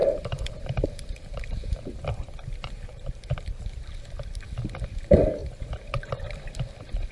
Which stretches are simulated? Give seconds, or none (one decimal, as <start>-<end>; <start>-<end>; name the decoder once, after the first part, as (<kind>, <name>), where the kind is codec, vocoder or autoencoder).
0.0-4.0 (vocoder, BigVGAN v2); 5.4-6.4